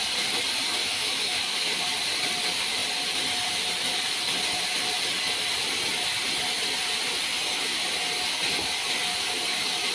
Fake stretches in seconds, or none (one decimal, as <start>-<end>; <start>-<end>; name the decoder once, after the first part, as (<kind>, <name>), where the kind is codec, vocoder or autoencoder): 0.8-1.7 (autoencoder, DAC-VAE)